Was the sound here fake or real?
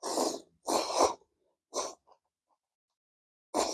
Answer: real